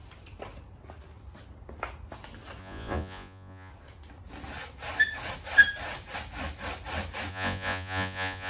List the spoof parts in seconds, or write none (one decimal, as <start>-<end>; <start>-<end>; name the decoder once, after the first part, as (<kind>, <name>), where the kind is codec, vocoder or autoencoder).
2.6-3.7 (vocoder, Vocos); 7.3-8.5